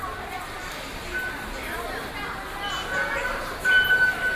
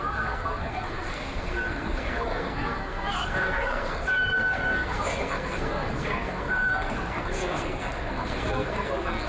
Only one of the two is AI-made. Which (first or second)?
second